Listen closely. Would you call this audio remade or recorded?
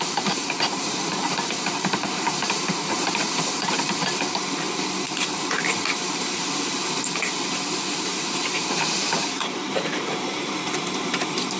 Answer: remade